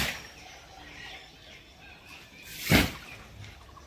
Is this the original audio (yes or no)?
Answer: yes